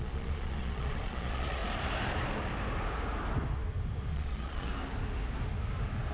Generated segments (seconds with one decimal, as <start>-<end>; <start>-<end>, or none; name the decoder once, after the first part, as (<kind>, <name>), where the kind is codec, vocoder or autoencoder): 0.0-1.6 (vocoder, Vocos); 4.1-4.7